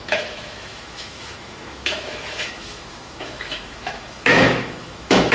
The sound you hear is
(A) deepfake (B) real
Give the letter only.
A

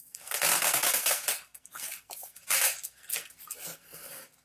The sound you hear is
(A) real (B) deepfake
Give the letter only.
B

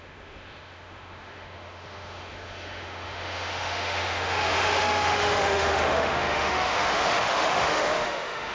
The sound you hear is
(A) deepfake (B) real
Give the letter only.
A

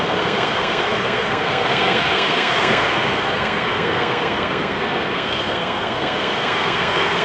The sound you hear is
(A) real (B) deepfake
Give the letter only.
B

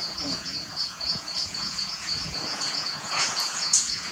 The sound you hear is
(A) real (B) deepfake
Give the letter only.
B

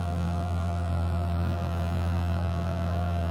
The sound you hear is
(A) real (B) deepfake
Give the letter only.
B